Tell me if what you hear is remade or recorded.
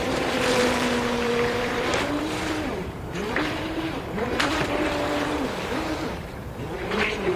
remade